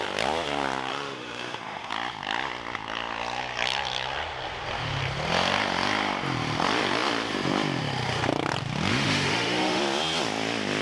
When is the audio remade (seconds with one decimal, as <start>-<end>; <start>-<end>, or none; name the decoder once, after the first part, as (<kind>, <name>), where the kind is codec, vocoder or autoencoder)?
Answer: 0.9-1.9 (autoencoder, DAC-VAE); 8.9-9.8